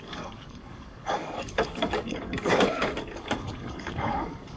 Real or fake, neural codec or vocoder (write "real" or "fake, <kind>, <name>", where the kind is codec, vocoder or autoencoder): fake, codec, DAC